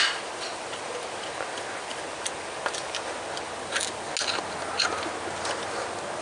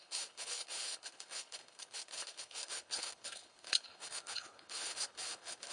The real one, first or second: first